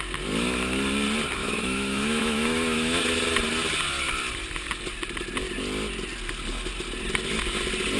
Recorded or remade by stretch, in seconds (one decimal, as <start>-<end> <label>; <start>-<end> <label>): 0.0-1.4 recorded; 1.4-3.0 remade; 3.0-8.0 recorded